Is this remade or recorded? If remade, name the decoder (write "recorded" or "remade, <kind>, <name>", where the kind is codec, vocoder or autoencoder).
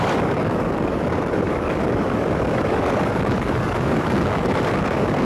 remade, codec, DAC